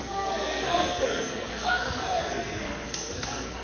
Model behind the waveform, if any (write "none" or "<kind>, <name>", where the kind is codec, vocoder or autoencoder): codec, SNAC